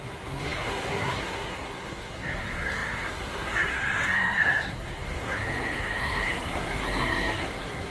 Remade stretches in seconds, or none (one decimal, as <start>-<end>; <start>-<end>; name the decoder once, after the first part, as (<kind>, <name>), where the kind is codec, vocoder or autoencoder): 0.0-7.9 (codec, SNAC)